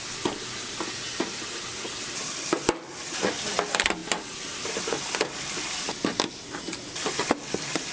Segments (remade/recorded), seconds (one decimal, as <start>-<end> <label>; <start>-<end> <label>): 0.0-7.9 recorded